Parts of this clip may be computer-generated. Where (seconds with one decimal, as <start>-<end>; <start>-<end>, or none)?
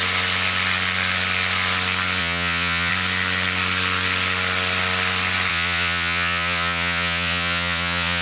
2.2-2.9; 5.5-8.2